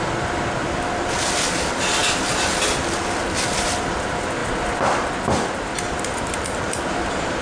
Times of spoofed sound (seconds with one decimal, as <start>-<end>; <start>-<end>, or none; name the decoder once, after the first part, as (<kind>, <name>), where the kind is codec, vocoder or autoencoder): none